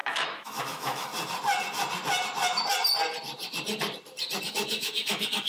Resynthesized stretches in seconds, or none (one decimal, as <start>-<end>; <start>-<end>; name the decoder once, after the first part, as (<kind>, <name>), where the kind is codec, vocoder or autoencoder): 0.0-1.1 (autoencoder, DAC-VAE); 4.4-5.5